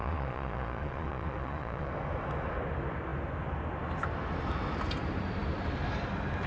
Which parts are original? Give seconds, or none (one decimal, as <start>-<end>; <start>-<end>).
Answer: 1.9-6.5